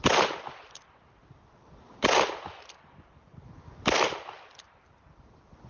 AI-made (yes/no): no